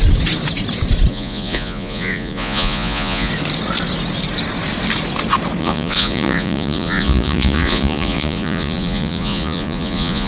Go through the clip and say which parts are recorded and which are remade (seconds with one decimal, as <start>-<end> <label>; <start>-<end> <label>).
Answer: 0.0-1.1 recorded; 1.1-3.3 remade; 3.3-5.6 recorded; 5.6-10.3 remade